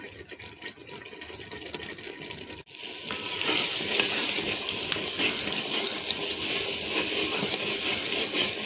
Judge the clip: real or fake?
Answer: real